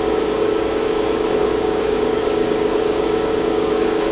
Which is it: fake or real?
fake